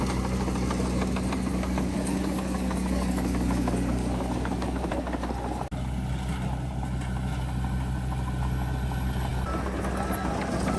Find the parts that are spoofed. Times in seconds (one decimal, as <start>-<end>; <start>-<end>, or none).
1.5-4.9